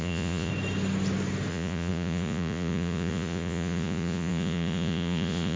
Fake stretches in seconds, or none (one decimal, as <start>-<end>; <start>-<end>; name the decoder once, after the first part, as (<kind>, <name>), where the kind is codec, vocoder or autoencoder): 0.0-0.5 (vocoder, Vocos); 1.5-5.6